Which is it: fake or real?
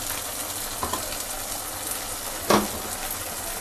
real